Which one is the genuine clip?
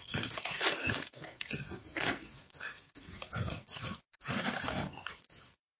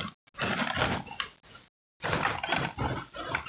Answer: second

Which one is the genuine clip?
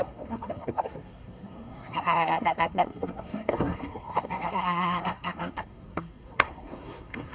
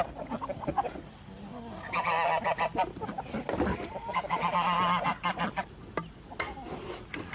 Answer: second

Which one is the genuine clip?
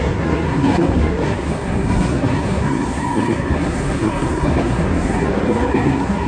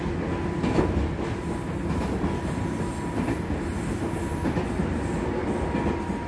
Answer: second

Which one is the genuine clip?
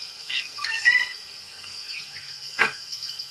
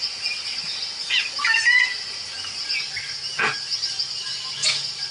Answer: second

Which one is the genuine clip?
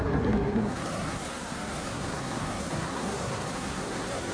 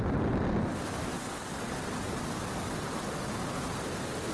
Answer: second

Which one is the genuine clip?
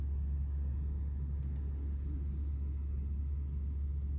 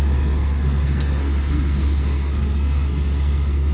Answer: first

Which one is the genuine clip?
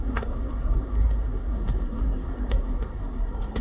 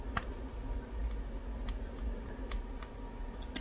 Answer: second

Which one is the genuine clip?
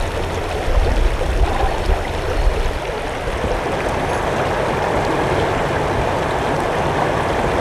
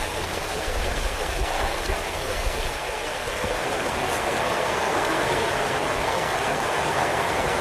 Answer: first